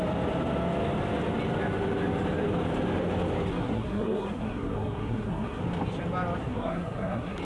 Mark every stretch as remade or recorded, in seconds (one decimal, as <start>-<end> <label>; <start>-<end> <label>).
0.0-3.5 recorded; 3.5-5.6 remade; 5.6-6.4 recorded; 6.4-7.4 remade